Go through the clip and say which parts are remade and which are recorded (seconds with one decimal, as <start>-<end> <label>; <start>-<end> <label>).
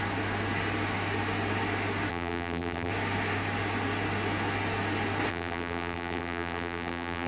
0.0-2.1 recorded; 2.1-2.9 remade; 2.9-5.3 recorded; 5.3-7.3 remade